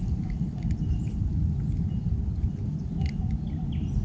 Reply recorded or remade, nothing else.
recorded